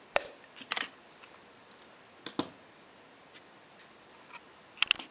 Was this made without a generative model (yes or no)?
yes